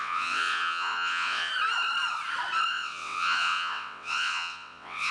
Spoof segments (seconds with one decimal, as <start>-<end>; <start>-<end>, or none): 0.0-1.5; 2.7-5.1

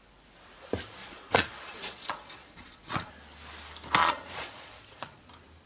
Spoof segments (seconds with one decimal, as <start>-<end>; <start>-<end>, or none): 1.0-3.1; 4.0-5.3

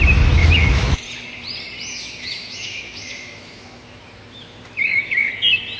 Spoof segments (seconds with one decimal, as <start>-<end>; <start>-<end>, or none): 0.4-1.0; 1.9-5.3

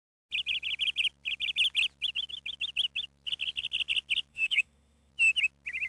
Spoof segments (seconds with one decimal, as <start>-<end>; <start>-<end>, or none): 4.3-5.1

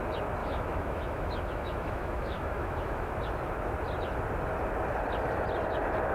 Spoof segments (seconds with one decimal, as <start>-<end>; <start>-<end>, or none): 0.4-3.1

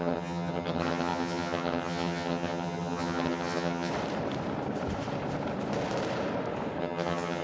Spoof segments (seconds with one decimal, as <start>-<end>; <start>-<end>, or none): 0.0-3.9; 6.8-7.4

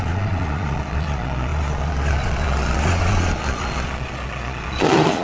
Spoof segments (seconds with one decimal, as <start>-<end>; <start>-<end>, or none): 0.0-5.2